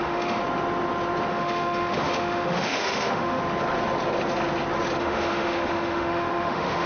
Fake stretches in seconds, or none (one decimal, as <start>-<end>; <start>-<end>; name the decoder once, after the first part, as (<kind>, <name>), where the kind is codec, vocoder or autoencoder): 0.0-0.4 (autoencoder, DAC-VAE); 1.3-3.4; 5.0-6.9

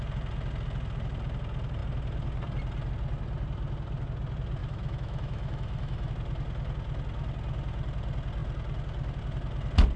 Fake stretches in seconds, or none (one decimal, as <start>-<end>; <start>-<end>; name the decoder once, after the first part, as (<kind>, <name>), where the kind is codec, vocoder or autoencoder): 4.6-6.1 (autoencoder, DAC-VAE)